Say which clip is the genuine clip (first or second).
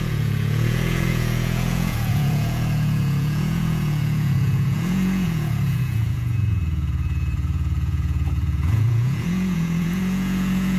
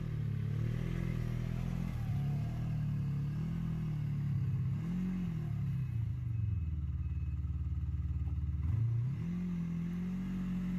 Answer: second